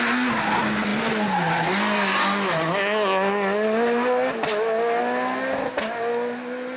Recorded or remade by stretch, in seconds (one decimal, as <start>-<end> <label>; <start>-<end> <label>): 0.0-6.8 recorded